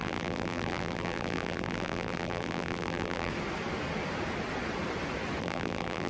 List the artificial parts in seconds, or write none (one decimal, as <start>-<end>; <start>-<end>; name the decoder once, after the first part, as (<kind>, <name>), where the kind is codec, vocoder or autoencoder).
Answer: 0.0-3.3 (vocoder, BigVGAN v2); 5.4-6.1

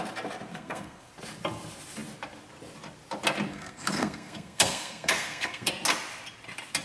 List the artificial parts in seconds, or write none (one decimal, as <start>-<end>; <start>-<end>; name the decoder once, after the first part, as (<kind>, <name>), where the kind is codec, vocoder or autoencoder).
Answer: 0.5-1.1 (codec, SNAC); 3.5-5.7

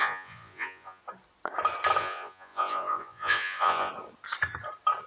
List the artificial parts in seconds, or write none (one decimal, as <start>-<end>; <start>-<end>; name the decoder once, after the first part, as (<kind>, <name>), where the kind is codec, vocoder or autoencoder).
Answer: 0.0-1.0 (vocoder, Vocos); 2.0-3.9

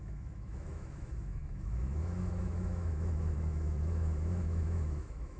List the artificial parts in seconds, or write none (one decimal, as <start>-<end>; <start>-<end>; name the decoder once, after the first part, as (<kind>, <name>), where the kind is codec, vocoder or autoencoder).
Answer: 0.0-5.4 (autoencoder, DAC-VAE)

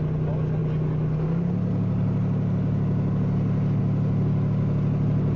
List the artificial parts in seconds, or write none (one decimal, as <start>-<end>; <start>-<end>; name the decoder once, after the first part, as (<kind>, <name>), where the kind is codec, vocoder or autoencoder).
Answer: none